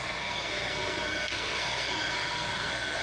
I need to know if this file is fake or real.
fake